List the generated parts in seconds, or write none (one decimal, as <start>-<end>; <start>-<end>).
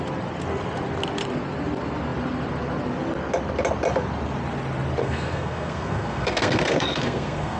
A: 5.0-7.6